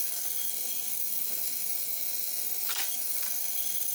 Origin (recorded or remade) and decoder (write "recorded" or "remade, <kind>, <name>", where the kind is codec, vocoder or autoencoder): remade, codec, SNAC